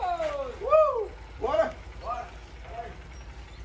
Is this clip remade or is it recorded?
recorded